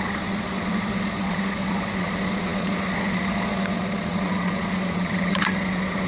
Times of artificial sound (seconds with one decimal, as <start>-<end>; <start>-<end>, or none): 0.0-6.1